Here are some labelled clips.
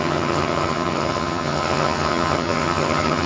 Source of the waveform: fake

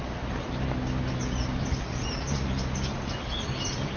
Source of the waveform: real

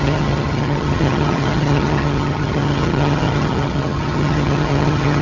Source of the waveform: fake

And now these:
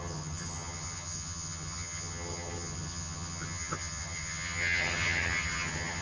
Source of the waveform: fake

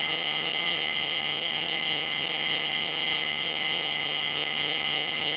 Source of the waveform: fake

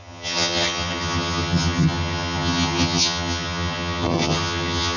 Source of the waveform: fake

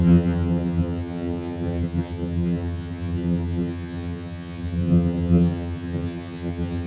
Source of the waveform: fake